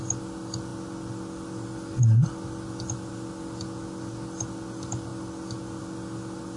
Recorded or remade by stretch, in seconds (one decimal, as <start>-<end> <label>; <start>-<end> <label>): 0.0-6.6 recorded